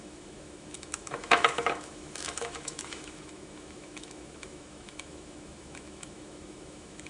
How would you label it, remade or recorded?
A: remade